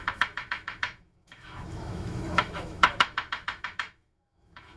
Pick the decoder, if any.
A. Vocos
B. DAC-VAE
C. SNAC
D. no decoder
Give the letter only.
B